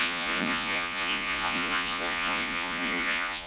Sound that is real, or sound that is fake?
fake